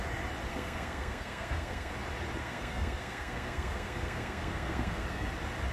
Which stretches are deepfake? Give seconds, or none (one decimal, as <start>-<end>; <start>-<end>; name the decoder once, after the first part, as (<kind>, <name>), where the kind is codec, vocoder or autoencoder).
0.5-1.9 (codec, SNAC); 2.4-5.3